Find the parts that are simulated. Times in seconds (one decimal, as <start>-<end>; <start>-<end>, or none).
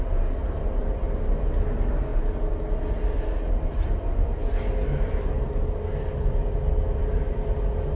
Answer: none